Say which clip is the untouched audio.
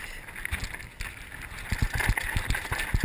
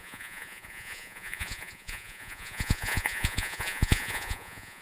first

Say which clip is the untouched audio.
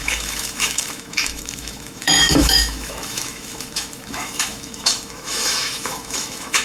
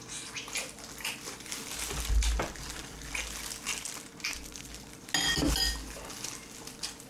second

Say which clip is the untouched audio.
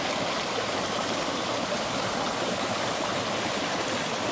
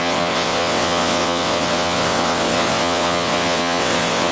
first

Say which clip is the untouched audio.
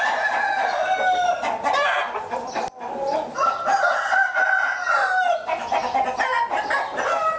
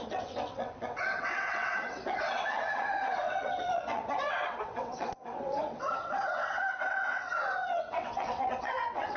first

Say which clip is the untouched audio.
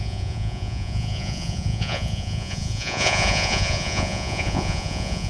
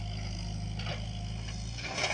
second